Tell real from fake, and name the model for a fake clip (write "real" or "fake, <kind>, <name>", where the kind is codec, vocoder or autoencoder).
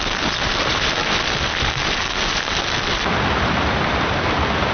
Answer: real